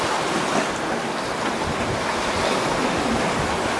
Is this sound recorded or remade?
recorded